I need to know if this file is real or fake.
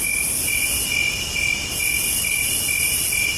real